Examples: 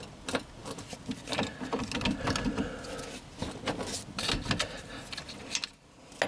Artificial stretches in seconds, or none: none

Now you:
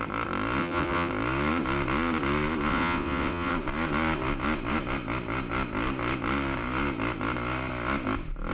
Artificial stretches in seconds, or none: 0.6-1.1 (vocoder, WaveNeXt); 2.7-3.5

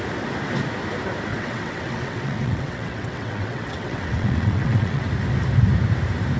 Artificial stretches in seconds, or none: 1.3-5.0 (vocoder, WaveNeXt)

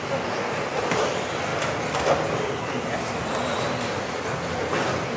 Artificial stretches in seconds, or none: none